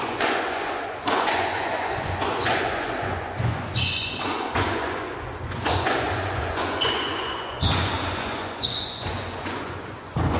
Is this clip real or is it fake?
fake